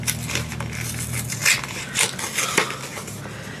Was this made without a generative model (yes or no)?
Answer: yes